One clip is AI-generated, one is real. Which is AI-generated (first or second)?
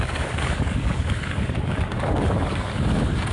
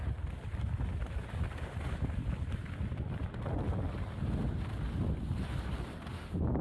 first